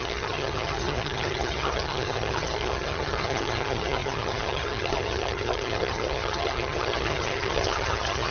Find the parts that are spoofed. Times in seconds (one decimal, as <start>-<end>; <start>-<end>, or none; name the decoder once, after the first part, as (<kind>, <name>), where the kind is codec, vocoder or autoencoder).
0.0-8.3 (vocoder, HiFi-GAN)